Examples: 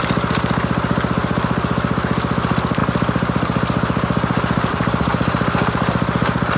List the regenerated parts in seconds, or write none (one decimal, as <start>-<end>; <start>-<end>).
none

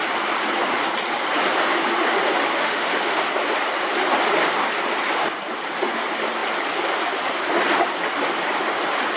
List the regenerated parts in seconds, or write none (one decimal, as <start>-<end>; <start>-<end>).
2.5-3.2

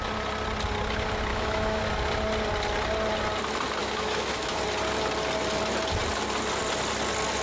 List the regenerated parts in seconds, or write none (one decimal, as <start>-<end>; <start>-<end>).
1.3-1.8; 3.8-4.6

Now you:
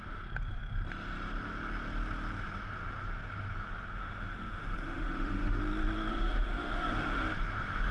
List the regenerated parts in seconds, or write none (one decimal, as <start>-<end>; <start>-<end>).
4.0-5.6; 6.1-7.2